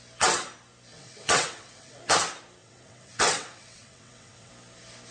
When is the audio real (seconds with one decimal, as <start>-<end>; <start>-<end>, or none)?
0.0-0.9; 2.0-2.6; 4.5-5.1